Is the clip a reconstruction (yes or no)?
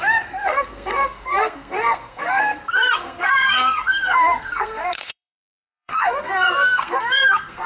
yes